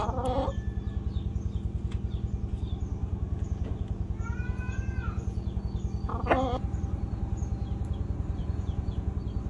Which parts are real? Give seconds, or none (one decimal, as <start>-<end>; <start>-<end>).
0.0-3.0; 5.6-8.4; 9.1-9.5